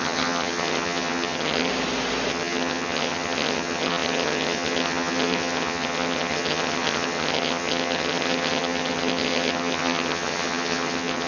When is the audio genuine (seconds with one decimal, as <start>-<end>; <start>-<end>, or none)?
1.7-2.3